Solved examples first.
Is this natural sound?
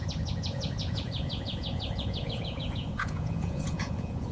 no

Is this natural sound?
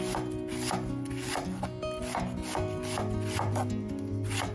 yes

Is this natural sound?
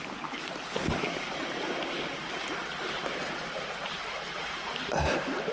yes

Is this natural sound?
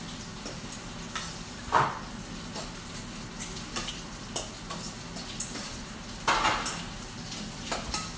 yes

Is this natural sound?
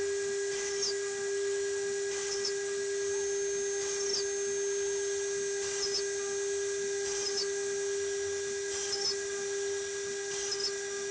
yes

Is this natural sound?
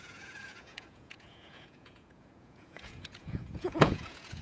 no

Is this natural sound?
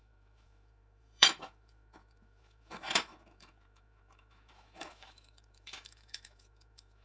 no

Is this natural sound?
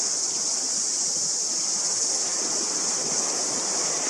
yes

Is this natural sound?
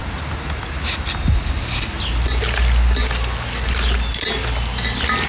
yes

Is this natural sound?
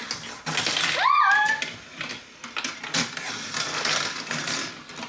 yes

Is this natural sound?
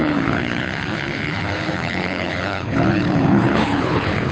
no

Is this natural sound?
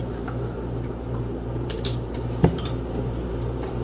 no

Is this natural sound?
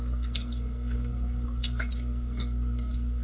no